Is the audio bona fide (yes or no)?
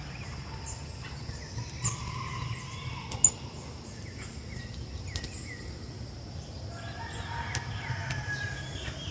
yes